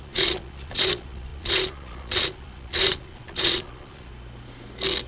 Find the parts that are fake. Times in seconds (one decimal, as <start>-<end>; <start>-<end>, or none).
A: 0.0-4.1